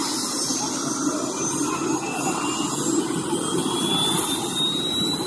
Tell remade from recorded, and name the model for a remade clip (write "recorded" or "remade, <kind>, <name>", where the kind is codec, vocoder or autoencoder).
recorded